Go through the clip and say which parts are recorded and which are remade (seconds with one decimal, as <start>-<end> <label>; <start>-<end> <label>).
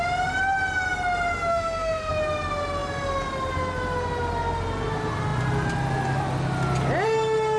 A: 0.0-1.5 recorded; 1.5-2.1 remade; 2.1-7.6 recorded